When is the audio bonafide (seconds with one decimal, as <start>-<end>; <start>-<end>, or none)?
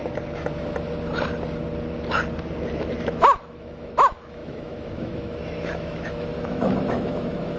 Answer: 0.0-2.7